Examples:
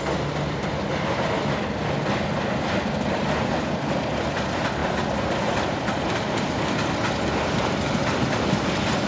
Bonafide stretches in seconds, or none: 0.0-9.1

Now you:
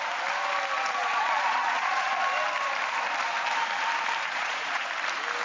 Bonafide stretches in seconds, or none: 0.0-1.0; 2.1-4.3; 4.9-5.4

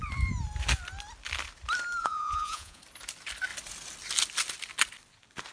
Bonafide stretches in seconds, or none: 0.0-2.0; 2.8-5.5

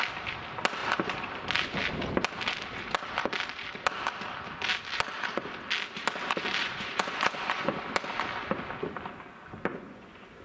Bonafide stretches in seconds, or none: 0.0-6.6; 7.8-9.7

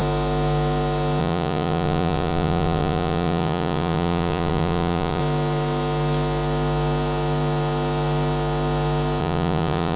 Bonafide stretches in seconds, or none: 0.0-1.2; 5.2-9.2

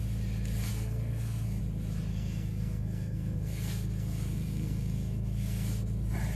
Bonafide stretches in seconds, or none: 0.0-0.7; 1.6-2.1; 5.7-6.4

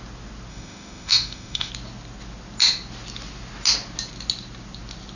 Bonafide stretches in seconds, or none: 0.0-0.5; 1.7-5.2